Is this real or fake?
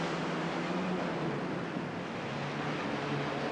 real